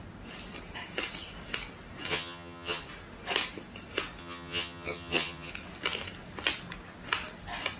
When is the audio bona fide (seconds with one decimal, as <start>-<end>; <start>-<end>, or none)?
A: 0.0-2.1; 2.8-4.2; 5.5-7.8